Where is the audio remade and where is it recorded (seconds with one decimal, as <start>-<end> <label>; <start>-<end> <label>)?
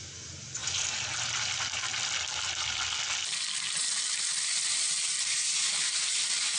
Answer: 0.0-6.6 recorded